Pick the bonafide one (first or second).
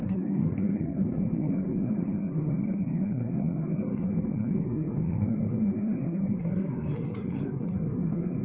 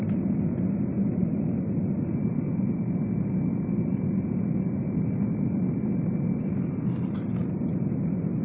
second